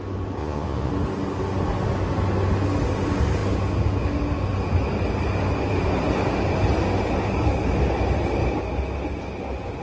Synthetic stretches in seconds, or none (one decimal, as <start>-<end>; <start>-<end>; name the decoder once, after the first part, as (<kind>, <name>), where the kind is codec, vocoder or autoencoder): 0.4-0.9 (vocoder, Vocos)